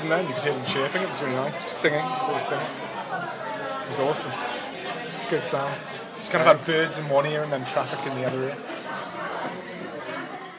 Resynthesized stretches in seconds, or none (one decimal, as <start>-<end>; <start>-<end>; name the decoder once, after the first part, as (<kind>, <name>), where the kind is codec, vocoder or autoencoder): 1.7-2.6 (vocoder, Vocos)